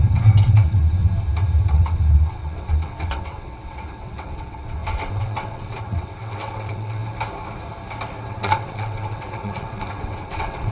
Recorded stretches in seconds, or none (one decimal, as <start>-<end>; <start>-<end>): 1.0-1.7; 7.0-8.3